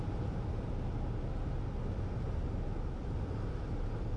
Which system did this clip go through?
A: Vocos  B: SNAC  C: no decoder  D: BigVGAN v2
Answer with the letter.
C